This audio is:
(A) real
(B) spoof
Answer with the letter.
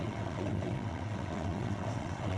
B